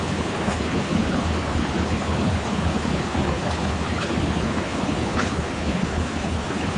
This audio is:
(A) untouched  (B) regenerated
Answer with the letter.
B